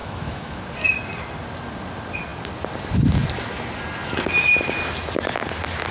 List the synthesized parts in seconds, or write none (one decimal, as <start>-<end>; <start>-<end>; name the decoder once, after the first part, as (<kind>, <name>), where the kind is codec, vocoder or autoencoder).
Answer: 0.0-0.6 (autoencoder, DAC-VAE)